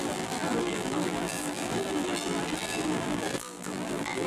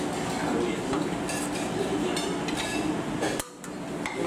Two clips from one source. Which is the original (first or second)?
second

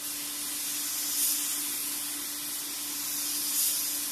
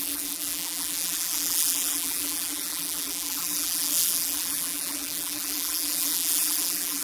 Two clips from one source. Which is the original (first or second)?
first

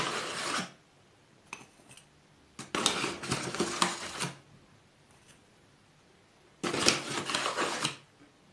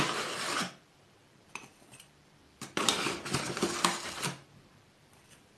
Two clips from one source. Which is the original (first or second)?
first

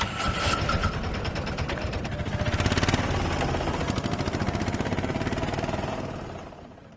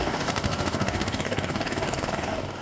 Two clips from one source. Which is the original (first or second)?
first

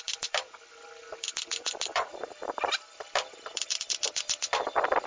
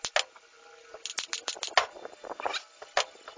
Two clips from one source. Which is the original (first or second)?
second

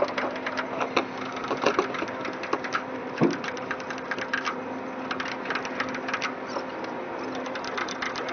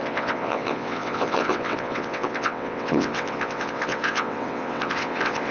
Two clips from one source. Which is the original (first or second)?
first